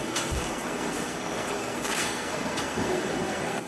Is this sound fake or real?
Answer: fake